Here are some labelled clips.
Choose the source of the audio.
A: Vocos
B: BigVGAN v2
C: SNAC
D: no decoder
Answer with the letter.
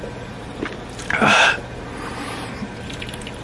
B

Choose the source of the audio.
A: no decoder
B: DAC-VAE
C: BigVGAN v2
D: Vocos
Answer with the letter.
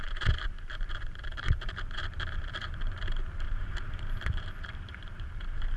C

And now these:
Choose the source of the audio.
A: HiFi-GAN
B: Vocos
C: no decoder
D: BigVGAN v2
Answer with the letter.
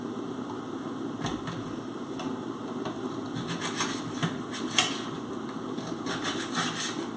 C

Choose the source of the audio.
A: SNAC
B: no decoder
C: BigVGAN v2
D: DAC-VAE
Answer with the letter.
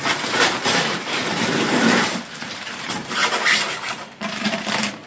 C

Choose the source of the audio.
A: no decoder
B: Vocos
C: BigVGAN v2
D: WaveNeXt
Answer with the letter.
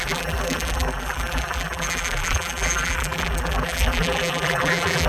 C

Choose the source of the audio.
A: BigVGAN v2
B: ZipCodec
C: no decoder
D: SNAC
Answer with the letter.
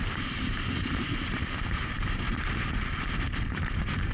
A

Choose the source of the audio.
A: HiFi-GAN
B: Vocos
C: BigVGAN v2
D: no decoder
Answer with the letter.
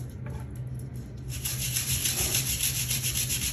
D